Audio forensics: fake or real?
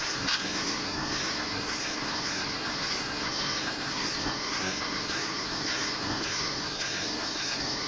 fake